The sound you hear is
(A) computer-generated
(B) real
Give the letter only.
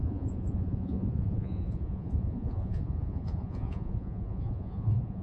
A